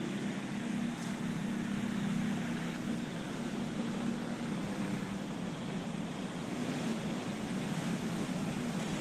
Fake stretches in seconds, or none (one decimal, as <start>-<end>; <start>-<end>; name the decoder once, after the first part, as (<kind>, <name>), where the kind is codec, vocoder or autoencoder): 2.6-3.1 (codec, SNAC)